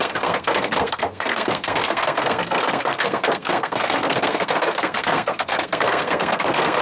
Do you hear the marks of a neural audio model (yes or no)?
yes